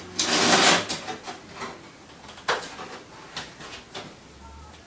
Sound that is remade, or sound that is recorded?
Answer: recorded